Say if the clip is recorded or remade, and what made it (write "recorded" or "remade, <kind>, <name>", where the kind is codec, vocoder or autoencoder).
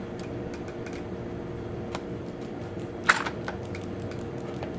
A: recorded